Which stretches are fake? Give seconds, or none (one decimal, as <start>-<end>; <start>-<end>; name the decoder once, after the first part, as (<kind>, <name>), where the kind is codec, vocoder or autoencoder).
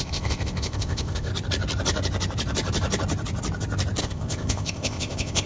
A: 0.0-1.3 (codec, ZipCodec); 4.0-5.5